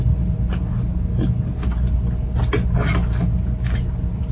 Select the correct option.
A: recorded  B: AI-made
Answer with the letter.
A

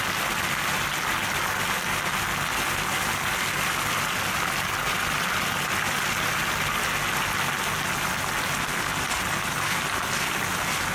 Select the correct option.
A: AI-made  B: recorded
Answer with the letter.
B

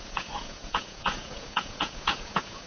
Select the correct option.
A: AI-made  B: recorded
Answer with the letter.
A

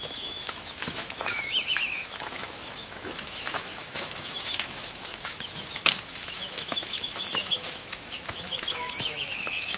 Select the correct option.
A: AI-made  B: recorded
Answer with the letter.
A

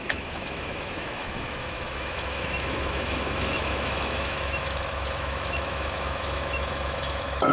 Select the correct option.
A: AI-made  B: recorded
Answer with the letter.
A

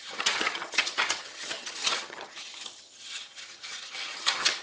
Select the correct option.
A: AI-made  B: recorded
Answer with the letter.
A